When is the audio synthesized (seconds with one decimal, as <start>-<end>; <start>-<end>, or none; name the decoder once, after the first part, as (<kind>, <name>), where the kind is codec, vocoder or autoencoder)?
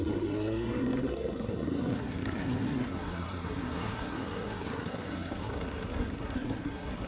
0.0-7.1 (codec, SNAC)